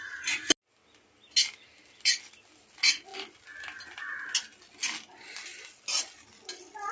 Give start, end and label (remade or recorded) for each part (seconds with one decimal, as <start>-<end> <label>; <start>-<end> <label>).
0.0-6.9 recorded